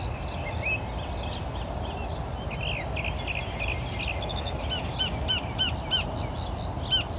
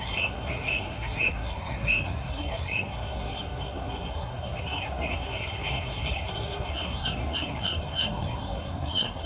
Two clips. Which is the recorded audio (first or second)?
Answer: first